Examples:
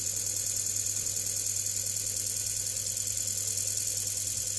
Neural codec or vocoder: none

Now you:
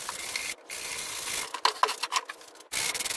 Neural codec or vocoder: none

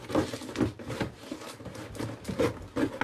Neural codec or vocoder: none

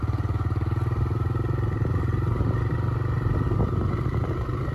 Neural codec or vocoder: none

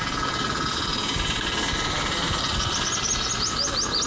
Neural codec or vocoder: none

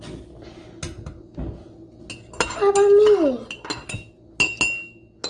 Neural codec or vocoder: none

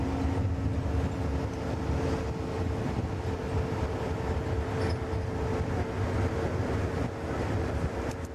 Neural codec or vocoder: none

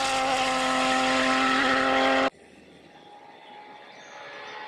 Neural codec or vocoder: none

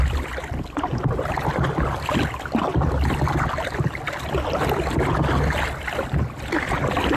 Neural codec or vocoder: none